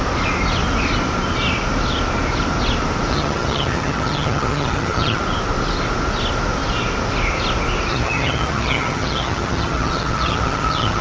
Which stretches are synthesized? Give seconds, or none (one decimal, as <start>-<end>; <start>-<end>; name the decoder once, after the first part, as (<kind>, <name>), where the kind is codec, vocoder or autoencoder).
3.1-5.2 (vocoder, HiFi-GAN); 7.9-11.0

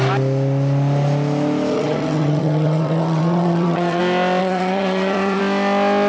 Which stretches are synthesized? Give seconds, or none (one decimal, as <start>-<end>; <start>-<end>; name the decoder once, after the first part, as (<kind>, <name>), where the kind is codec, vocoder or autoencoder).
1.7-4.0 (vocoder, HiFi-GAN); 4.4-5.4

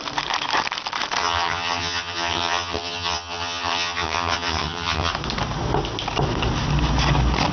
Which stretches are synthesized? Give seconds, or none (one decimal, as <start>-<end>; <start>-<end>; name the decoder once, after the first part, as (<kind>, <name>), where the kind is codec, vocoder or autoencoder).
1.2-5.1 (vocoder, HiFi-GAN)

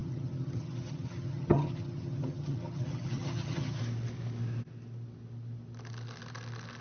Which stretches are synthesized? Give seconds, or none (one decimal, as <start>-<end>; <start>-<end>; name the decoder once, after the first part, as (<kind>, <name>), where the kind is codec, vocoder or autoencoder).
0.0-3.8 (vocoder, HiFi-GAN)

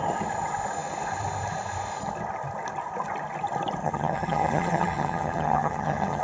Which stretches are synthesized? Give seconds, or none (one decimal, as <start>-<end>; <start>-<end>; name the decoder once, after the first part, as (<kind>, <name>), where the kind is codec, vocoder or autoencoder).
3.8-6.2 (vocoder, HiFi-GAN)